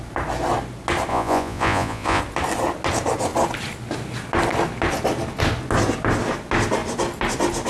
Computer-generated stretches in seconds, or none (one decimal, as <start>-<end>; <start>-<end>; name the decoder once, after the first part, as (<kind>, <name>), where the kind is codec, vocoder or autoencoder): 1.1-2.2 (vocoder, Vocos)